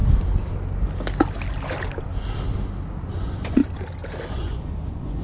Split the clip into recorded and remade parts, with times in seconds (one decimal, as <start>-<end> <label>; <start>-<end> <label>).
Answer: 0.0-3.1 recorded; 3.1-3.6 remade; 3.6-4.3 recorded; 4.3-5.2 remade